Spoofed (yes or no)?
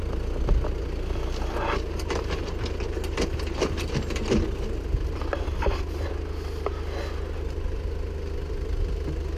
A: no